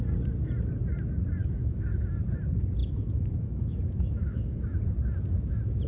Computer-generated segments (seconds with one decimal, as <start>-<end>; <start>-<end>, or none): 1.4-2.1; 2.8-4.8